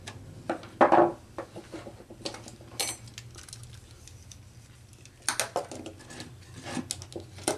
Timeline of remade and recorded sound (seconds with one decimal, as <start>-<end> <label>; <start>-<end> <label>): 0.0-7.6 recorded